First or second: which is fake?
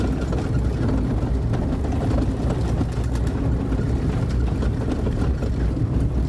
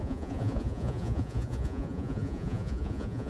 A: second